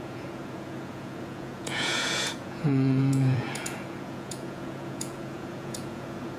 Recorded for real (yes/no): no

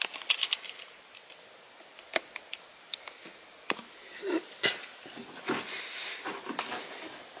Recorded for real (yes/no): yes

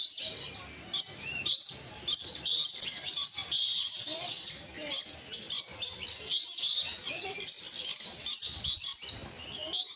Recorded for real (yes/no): yes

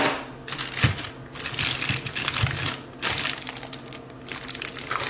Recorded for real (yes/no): yes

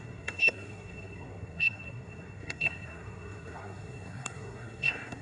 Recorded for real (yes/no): no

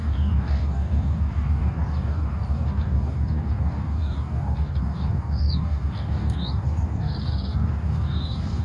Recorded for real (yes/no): no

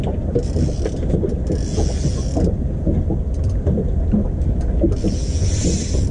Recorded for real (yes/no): yes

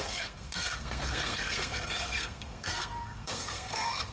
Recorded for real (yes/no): no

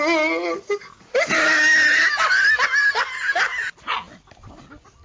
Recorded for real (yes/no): yes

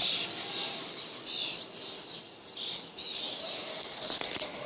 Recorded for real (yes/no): yes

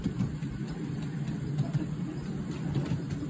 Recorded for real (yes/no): yes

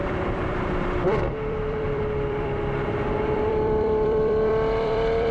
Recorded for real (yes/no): no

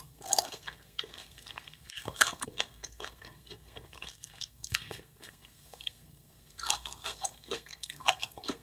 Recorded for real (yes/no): no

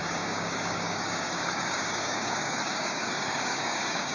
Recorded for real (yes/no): no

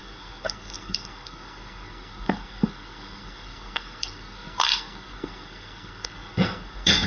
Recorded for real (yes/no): no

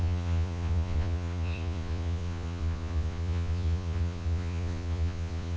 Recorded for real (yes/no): no